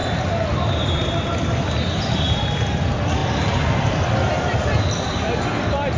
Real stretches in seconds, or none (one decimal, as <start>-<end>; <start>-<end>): 0.0-6.0